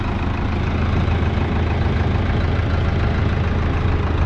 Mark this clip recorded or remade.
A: recorded